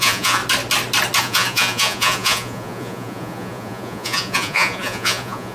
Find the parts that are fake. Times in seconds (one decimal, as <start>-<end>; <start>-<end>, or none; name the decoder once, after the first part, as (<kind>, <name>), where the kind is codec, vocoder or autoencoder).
0.0-0.4 (vocoder, Vocos); 1.2-5.5